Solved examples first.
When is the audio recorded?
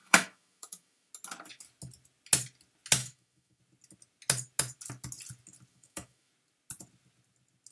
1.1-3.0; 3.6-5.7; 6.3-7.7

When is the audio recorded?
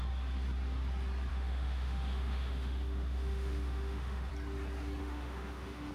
0.0-1.3; 4.3-5.0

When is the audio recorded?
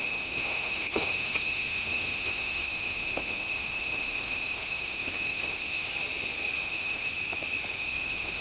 5.9-6.6; 7.1-7.7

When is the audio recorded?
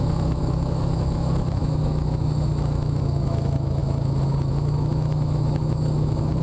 none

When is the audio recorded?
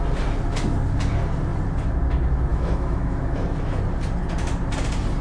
0.0-2.5; 3.8-5.2